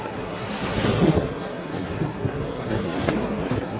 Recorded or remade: remade